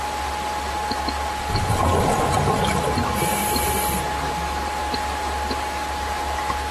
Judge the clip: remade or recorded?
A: recorded